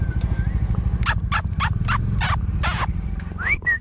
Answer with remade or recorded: recorded